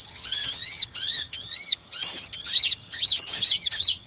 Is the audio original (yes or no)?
no